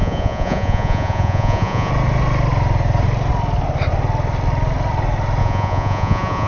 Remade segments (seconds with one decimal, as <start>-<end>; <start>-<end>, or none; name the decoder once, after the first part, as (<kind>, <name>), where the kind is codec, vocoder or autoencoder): 0.0-1.9 (vocoder, Vocos); 5.4-6.5